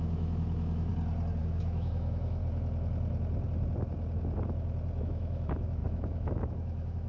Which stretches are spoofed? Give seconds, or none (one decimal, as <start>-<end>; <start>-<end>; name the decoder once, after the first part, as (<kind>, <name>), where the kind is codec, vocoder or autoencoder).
0.0-0.9 (autoencoder, DAC-VAE); 1.4-2.4; 5.0-7.1